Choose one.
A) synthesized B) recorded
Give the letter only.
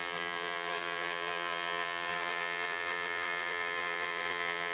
A